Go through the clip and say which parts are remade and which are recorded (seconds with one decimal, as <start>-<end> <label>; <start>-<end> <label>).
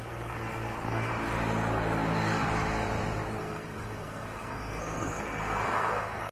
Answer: 0.0-1.1 remade; 1.1-3.4 recorded; 3.4-6.3 remade